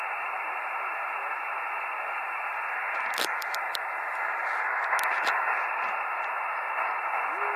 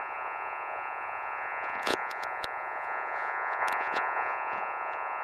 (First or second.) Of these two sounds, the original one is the first